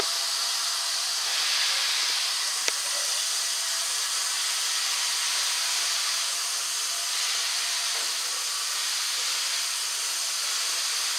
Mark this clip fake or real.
real